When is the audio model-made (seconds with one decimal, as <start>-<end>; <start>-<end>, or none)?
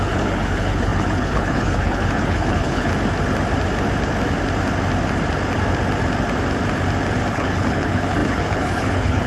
0.0-2.9; 7.3-9.3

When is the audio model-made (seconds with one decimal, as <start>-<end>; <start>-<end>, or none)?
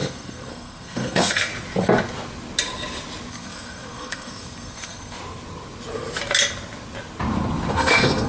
0.0-1.5; 3.3-5.2; 7.7-8.3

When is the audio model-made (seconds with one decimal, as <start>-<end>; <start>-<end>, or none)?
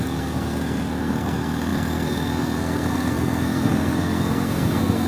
0.0-5.1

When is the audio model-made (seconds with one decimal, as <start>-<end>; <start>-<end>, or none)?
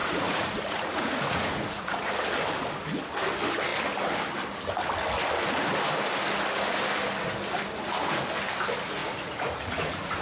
0.0-2.1; 9.0-10.2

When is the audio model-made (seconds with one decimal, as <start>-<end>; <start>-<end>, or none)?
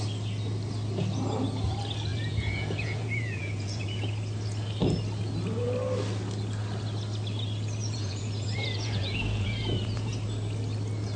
2.1-4.1; 7.8-10.1